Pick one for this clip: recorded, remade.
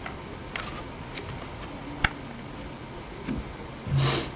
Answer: recorded